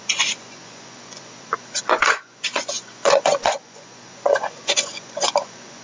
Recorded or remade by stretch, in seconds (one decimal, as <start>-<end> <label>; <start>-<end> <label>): 0.0-5.8 remade